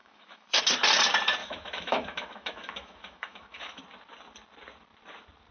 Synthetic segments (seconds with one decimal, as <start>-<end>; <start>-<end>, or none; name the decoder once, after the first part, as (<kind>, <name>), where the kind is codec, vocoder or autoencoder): 0.0-0.6 (autoencoder, DAC-VAE); 1.4-3.8